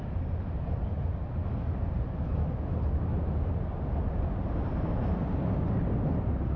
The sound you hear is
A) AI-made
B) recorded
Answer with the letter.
B